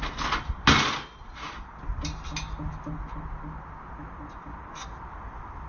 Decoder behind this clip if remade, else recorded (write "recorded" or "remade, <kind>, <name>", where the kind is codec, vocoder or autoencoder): recorded